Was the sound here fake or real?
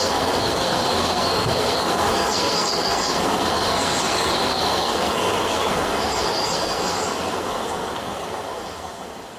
fake